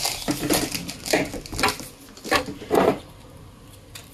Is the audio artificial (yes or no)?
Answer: no